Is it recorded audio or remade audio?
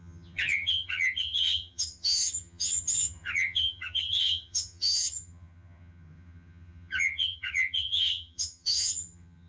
remade